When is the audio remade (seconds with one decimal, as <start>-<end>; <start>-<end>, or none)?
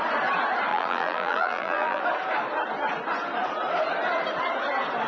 0.7-2.0